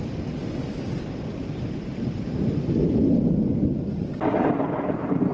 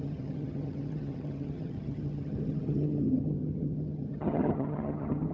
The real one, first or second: first